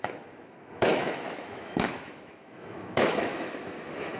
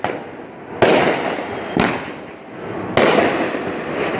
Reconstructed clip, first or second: first